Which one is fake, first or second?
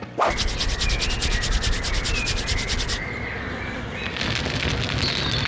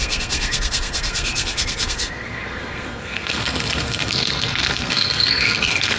second